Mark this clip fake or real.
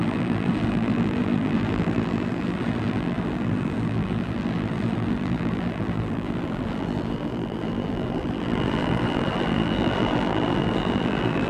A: fake